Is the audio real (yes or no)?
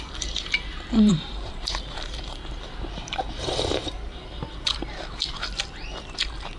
no